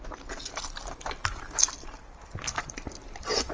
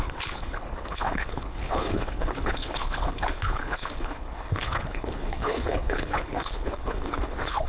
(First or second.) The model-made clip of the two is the second